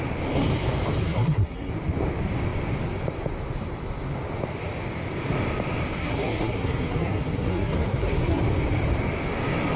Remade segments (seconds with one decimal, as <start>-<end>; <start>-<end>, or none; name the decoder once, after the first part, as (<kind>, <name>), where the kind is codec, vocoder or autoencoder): 1.0-1.7 (codec, SNAC); 6.0-8.4